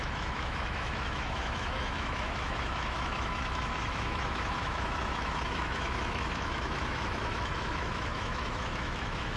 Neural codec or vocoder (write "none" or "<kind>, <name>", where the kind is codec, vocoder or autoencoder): autoencoder, DAC-VAE